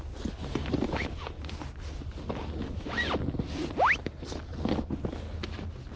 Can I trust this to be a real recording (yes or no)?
yes